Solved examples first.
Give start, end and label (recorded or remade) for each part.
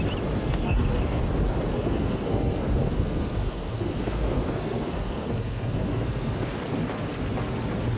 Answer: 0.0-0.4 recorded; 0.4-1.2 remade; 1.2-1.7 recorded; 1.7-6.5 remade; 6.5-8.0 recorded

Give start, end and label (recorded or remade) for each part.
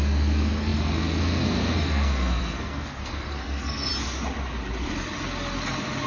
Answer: 0.0-3.9 remade; 3.9-6.1 recorded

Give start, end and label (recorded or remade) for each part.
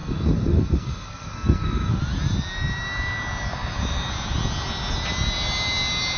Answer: 0.0-2.0 remade; 2.0-6.2 recorded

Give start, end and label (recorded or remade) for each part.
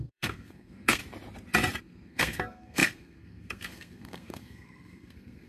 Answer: 0.0-1.0 remade; 1.0-1.8 recorded; 1.8-5.5 remade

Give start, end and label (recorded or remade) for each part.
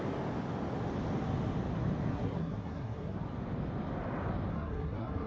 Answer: 0.0-2.1 recorded; 2.1-3.2 remade; 3.2-4.5 recorded; 4.5-5.3 remade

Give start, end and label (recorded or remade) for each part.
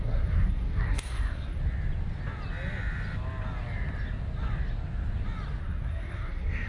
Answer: 0.0-1.6 remade; 1.6-5.6 recorded; 5.6-6.7 remade